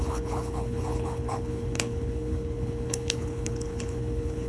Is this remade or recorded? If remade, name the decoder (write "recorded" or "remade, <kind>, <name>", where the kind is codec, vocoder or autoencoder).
remade, codec, HILCodec